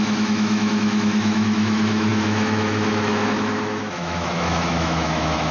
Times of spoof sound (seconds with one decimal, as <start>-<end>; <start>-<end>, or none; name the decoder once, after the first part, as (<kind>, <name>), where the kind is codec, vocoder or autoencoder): 0.0-5.5 (autoencoder, DAC-VAE)